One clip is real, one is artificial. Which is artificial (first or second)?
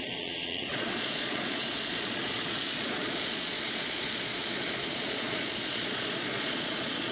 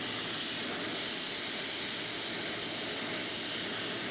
first